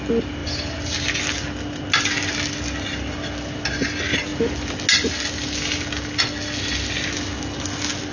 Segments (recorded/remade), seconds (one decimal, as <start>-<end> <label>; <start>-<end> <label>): 0.0-8.1 recorded